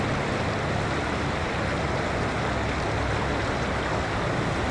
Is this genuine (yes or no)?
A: yes